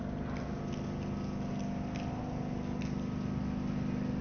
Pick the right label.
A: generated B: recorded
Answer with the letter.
B